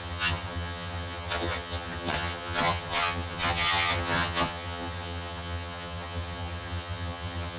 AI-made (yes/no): yes